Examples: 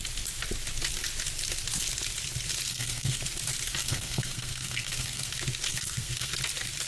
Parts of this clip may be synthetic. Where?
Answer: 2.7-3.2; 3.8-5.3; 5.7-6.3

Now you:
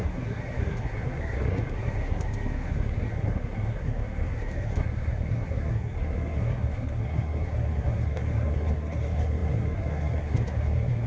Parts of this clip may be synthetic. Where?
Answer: 0.0-11.1

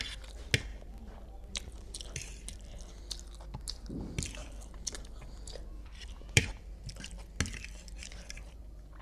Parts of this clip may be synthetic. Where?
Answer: 0.7-1.8; 4.4-6.5; 8.0-8.6